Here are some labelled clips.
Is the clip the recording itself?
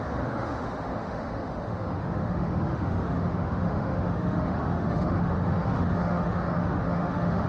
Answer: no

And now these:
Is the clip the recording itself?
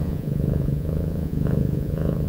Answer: no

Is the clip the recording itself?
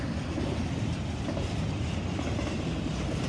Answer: yes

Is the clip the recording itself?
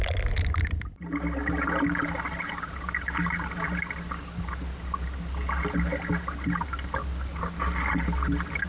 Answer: yes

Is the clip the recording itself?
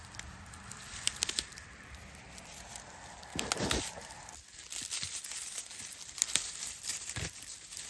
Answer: yes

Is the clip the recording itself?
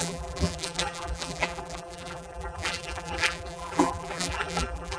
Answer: no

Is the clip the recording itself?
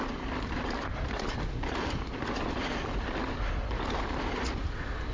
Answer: yes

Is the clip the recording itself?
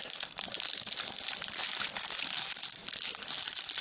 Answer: yes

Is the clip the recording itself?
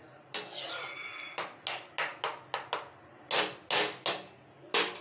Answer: yes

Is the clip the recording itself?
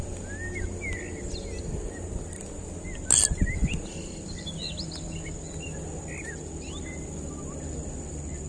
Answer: yes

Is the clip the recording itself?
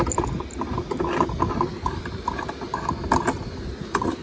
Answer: yes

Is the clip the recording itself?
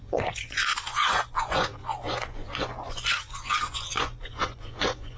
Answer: no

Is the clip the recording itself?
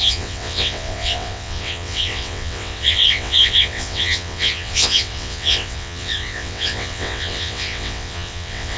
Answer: no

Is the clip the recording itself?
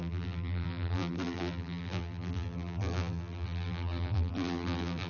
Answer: no